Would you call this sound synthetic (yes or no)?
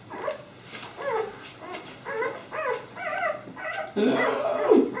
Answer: no